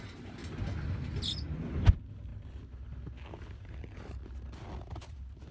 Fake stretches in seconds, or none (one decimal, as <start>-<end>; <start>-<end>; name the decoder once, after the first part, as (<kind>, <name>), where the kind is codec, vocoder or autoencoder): 0.0-0.4 (vocoder, BigVGAN v2); 1.9-2.3; 3.5-4.2; 4.8-5.5